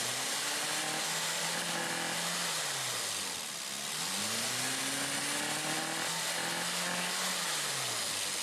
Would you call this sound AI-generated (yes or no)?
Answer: no